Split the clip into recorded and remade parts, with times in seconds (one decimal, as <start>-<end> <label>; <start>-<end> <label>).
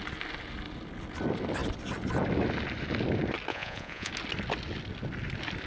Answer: 0.0-3.5 recorded; 3.5-4.1 remade; 4.1-5.7 recorded